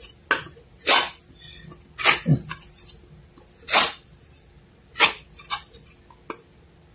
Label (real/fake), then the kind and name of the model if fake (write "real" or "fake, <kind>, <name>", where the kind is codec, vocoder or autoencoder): real